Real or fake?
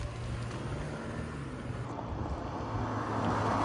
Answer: real